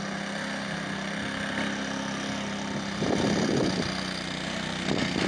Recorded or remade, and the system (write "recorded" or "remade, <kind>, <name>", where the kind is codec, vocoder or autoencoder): recorded